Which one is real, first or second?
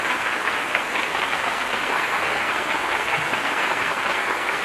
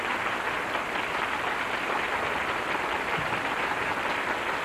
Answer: second